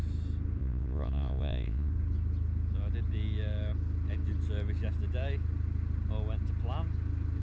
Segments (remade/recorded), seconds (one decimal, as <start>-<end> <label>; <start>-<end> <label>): 0.0-0.6 recorded; 0.6-1.9 remade; 1.9-7.4 recorded